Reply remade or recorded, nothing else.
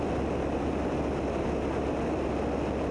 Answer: recorded